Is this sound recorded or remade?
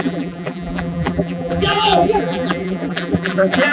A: remade